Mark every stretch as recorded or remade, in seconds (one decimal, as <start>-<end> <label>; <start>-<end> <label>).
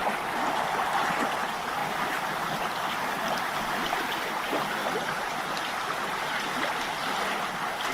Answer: 0.0-1.8 recorded; 1.8-2.4 remade; 2.4-4.8 recorded; 4.8-5.9 remade; 5.9-7.9 recorded